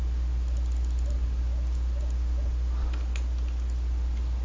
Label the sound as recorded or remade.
recorded